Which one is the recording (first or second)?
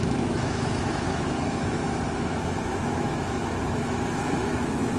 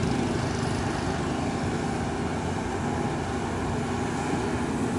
second